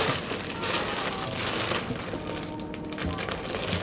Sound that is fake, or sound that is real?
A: real